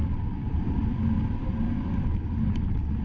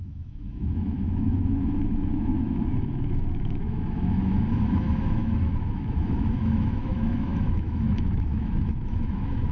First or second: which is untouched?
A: first